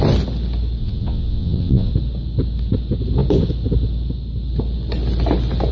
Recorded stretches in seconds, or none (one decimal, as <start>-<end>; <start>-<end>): 0.0-0.8; 1.9-5.7